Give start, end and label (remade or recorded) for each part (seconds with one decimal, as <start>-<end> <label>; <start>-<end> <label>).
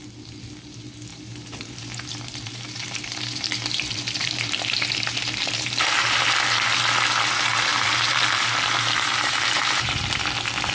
0.0-1.1 recorded; 1.1-6.2 remade; 6.2-7.7 recorded; 7.7-10.0 remade; 10.0-10.7 recorded